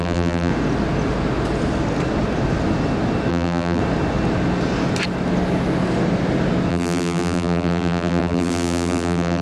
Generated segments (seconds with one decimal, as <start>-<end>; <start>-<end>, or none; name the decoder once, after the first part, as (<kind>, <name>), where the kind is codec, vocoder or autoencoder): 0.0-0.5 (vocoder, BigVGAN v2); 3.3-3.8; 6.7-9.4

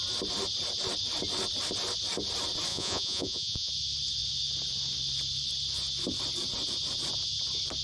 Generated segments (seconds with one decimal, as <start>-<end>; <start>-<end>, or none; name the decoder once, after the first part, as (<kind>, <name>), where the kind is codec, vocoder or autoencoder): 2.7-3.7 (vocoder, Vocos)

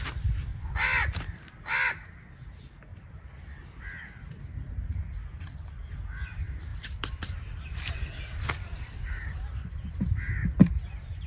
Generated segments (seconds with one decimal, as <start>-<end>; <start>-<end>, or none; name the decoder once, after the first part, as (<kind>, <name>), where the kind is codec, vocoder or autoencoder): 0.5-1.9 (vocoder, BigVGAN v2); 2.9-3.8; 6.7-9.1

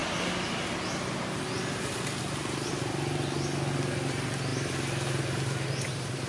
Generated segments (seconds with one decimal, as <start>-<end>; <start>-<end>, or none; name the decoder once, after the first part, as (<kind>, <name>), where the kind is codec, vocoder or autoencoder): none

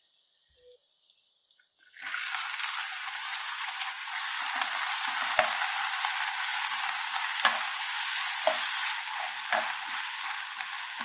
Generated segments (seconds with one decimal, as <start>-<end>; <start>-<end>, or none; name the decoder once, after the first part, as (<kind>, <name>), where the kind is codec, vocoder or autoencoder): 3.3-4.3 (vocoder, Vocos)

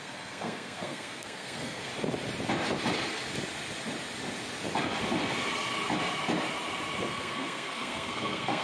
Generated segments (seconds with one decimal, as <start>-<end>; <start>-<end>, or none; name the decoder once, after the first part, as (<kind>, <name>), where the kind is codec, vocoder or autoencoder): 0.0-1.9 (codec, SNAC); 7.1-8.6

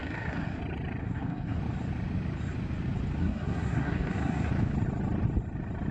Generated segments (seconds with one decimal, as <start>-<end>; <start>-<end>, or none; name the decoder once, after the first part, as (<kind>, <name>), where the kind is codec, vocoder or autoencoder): 0.0-0.6 (codec, SNAC); 1.0-1.6; 3.2-4.5

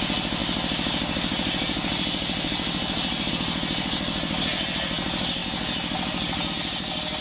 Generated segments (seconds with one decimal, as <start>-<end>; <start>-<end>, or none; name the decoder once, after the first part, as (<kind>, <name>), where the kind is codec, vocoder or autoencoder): none